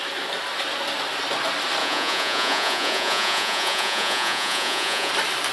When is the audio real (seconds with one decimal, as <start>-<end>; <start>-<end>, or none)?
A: 0.0-1.8; 5.1-5.5